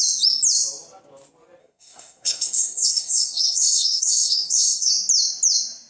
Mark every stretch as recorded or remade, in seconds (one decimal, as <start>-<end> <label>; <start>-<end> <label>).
0.0-1.6 recorded; 1.6-4.9 remade; 4.9-5.9 recorded